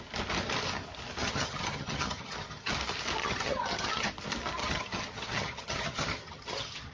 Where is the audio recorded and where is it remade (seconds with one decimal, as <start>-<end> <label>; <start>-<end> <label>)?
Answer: 0.0-1.2 recorded; 1.2-2.7 remade; 2.7-3.2 recorded; 3.2-4.1 remade; 4.1-4.6 recorded; 4.6-6.9 remade